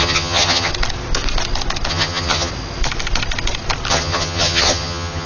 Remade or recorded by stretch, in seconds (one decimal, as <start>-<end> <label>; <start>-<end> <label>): 0.0-0.7 remade; 0.7-1.9 recorded; 1.9-2.5 remade; 2.5-3.9 recorded; 3.9-5.3 remade